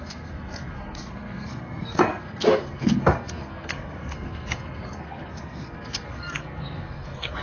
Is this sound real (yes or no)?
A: no